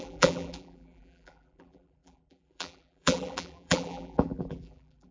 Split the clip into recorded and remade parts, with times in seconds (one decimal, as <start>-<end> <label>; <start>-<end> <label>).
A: 0.0-5.1 remade